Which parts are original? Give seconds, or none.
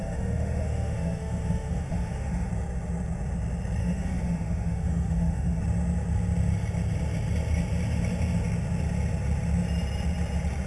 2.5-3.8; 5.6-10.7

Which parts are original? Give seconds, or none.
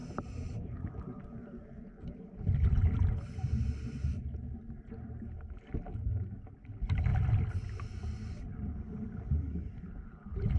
0.9-10.6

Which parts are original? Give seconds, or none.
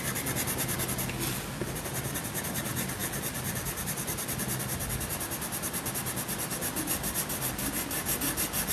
0.0-8.7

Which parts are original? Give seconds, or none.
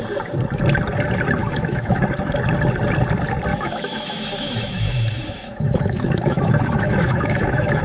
0.0-1.4; 2.0-3.5